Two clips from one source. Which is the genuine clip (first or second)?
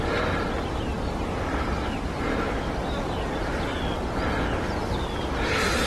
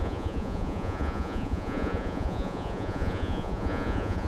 first